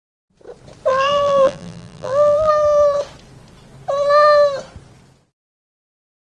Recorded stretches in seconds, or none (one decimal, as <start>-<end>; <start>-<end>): 0.0-0.9; 2.5-6.3

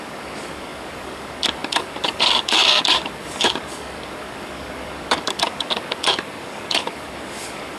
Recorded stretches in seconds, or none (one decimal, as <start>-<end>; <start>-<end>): none

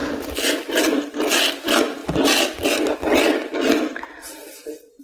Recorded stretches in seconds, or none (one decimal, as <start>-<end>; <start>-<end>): 1.2-5.0

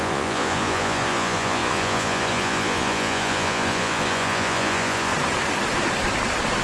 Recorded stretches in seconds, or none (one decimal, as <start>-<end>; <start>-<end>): 5.1-6.6

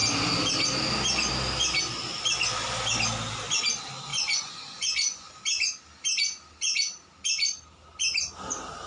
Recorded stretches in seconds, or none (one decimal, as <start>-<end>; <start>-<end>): 0.0-4.1; 5.4-8.9

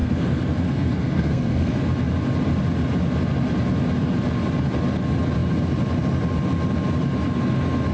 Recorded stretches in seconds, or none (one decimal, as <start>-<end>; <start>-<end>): 1.8-7.9

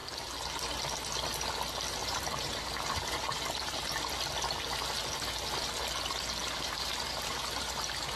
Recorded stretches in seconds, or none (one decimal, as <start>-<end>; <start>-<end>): 0.0-2.0; 3.9-6.4

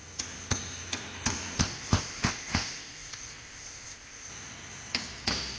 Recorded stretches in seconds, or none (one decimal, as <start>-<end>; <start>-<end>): 0.0-1.6; 4.3-5.6